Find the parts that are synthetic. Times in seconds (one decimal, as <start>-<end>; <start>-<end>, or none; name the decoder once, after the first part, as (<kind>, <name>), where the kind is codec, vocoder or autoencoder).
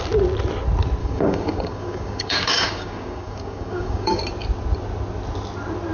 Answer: 1.0-4.2 (codec, DAC)